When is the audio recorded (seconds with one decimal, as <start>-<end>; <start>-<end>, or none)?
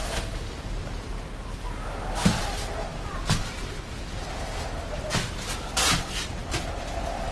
0.0-7.3